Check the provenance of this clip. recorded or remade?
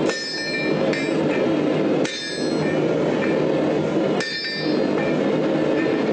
recorded